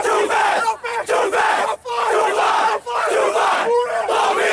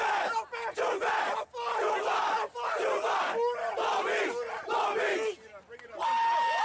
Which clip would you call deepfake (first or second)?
first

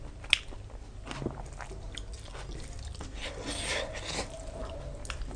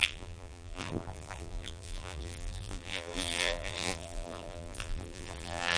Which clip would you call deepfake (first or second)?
second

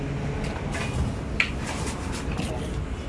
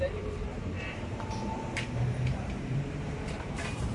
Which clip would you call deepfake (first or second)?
second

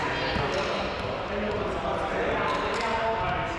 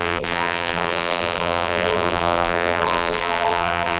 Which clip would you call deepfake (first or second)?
second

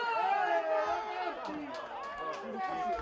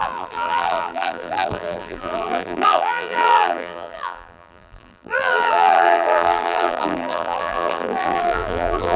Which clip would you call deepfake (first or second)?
second